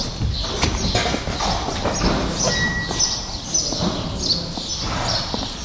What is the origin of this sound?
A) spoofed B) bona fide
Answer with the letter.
B